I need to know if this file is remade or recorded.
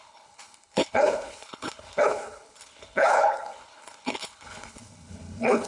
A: remade